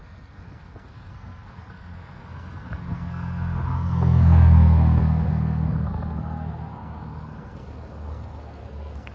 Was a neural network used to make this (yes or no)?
yes